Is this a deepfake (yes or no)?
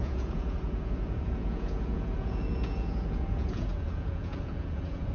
yes